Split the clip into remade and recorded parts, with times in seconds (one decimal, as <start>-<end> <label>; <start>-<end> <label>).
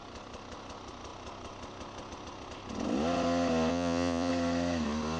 0.0-3.7 recorded; 3.7-4.3 remade; 4.3-5.2 recorded